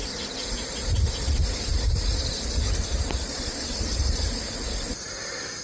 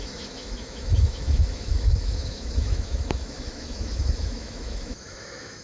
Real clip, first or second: first